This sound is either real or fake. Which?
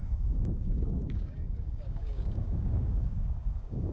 fake